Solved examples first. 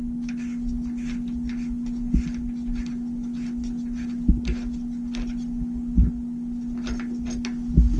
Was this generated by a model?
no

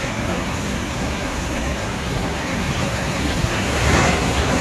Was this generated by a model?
yes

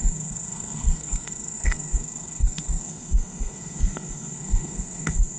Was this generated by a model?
yes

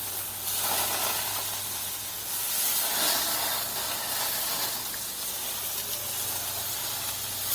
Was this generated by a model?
no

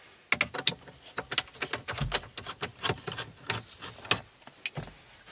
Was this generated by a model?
no